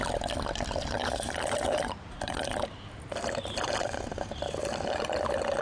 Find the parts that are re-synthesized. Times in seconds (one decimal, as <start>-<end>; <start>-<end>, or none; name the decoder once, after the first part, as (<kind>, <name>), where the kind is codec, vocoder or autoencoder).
1.0-4.4 (vocoder, BigVGAN v2)